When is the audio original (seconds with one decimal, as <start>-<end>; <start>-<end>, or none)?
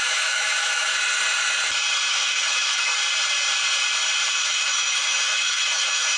0.9-2.1; 2.9-4.3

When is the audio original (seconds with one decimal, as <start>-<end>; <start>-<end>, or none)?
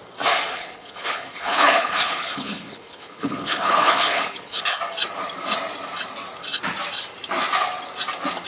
0.0-0.5; 4.8-8.5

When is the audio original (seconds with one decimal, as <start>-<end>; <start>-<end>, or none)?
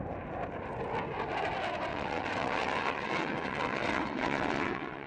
0.0-1.9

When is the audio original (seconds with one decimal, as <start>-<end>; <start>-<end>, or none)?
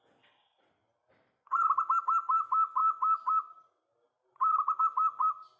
0.0-0.8; 2.0-5.6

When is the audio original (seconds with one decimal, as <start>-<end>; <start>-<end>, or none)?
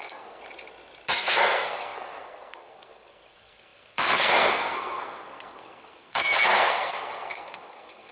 0.4-1.1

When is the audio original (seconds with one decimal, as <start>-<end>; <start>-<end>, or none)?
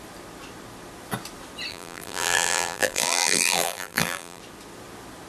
0.0-1.7; 4.4-5.3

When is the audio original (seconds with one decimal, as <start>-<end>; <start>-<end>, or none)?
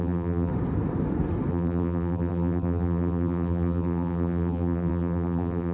0.5-1.5